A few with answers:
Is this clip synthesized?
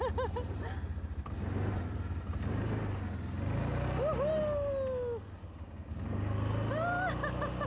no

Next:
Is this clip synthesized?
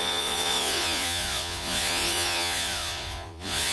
yes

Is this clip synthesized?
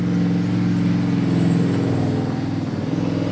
no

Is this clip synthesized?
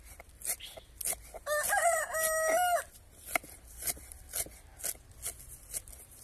no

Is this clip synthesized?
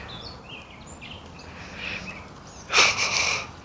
no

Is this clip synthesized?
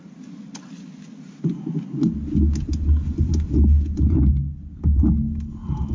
no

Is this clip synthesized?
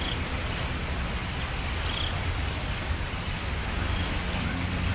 no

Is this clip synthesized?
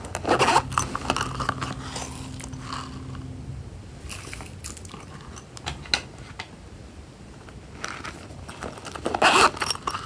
no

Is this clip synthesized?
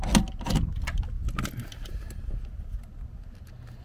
no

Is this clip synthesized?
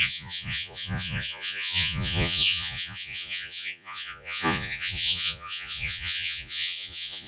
yes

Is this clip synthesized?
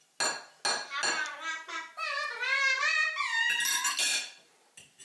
no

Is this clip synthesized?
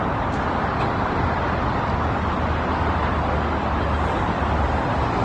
no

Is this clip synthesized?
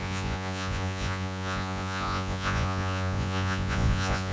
yes